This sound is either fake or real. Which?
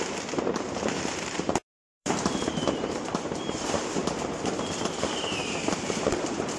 fake